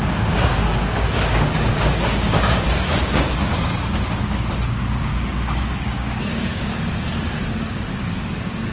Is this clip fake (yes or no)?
yes